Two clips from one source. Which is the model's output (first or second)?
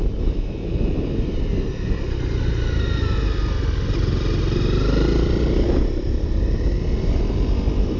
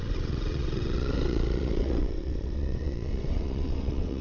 second